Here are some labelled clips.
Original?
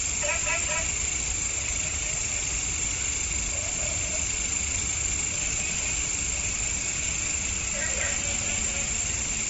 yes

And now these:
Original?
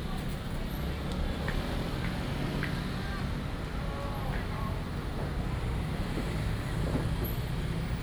yes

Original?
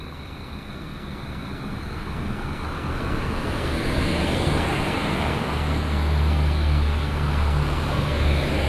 no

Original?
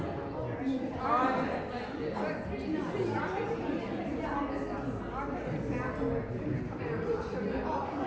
yes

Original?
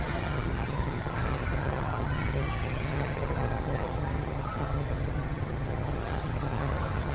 no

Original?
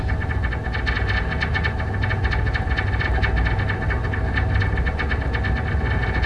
yes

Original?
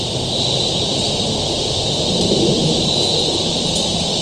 no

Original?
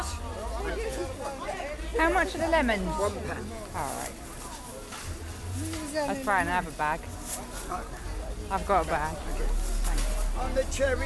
yes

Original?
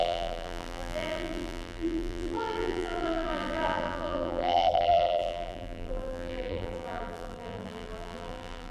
no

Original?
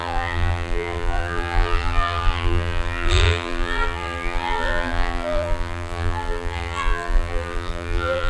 no